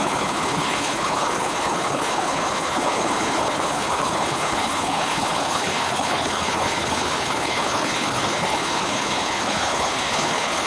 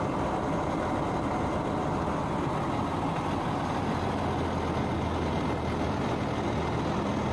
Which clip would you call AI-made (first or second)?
first